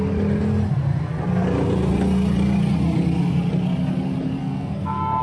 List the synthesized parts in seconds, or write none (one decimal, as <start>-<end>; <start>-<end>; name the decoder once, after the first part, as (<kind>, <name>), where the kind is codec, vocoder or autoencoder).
4.4-5.2 (codec, SNAC)